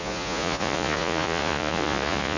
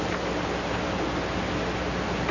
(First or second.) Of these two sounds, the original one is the second